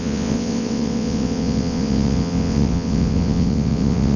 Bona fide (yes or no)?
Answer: no